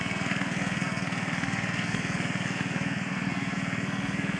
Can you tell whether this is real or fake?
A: fake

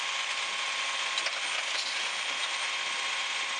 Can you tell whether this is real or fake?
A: real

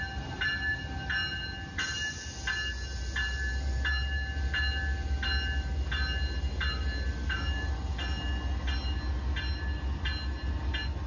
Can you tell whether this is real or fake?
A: real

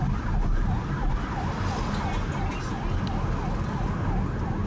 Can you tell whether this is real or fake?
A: real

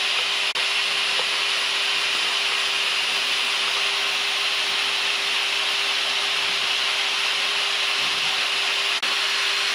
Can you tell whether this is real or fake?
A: real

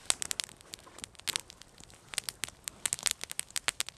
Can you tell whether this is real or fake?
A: real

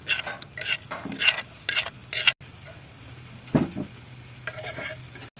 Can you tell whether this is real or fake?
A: real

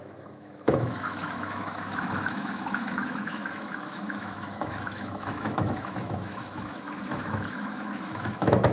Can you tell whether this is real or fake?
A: fake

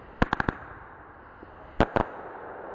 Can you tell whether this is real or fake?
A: real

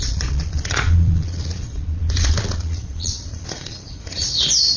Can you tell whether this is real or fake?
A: fake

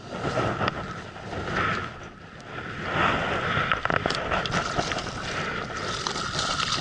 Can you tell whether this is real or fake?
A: real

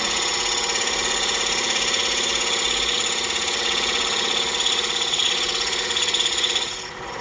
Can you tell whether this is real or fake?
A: fake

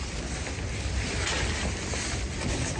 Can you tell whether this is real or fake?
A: real